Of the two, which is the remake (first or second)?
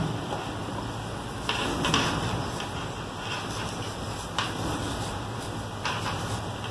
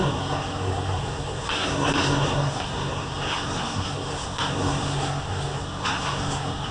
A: second